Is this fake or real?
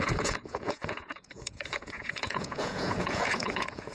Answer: fake